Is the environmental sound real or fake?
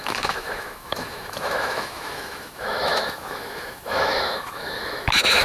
fake